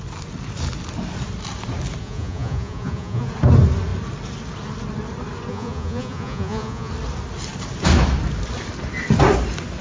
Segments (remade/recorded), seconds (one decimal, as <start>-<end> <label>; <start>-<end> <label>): 0.0-2.0 recorded; 2.0-3.3 remade; 3.3-5.5 recorded; 5.5-6.9 remade; 6.9-9.8 recorded